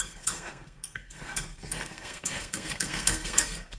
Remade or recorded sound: remade